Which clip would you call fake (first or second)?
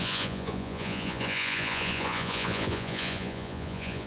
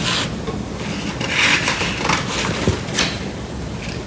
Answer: first